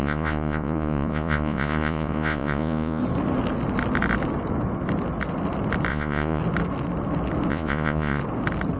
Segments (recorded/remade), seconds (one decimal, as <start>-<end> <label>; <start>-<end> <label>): 0.0-3.0 remade; 3.0-5.9 recorded; 5.9-6.4 remade; 6.4-7.5 recorded; 7.5-8.2 remade; 8.2-8.8 recorded